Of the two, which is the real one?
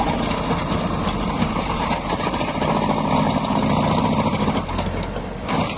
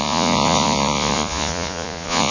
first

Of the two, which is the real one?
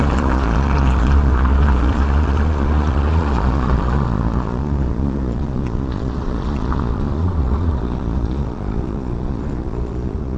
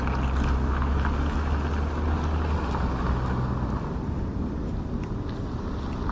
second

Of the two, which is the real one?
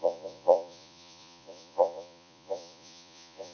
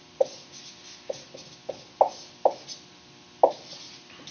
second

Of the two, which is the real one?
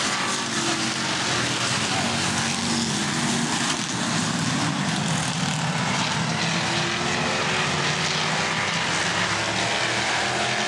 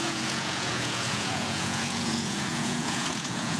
first